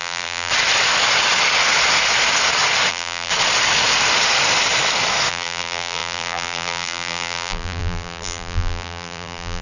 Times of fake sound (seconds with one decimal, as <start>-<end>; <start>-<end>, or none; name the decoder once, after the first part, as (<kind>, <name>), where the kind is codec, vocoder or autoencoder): 0.0-0.5 (vocoder, BigVGAN v2); 2.9-3.3; 5.3-9.6